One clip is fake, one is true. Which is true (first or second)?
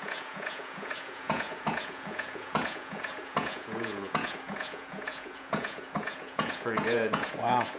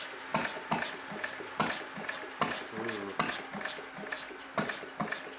second